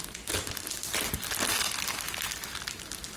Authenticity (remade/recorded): recorded